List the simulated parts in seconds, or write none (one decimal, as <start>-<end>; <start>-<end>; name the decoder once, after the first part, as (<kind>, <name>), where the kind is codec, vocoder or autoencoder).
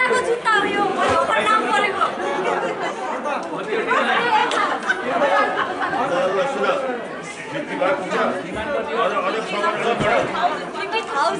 0.9-2.9 (vocoder, Vocos); 4.4-8.1